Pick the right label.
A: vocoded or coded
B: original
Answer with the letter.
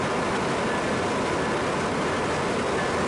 B